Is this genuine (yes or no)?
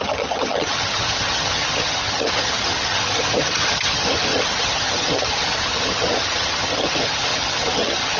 no